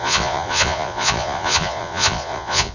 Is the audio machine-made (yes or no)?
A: yes